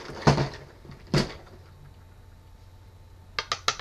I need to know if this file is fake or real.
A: real